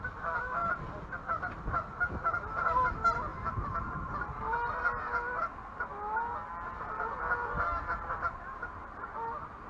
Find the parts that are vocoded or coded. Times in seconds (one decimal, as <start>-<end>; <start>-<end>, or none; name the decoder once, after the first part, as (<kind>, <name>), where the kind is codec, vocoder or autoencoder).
none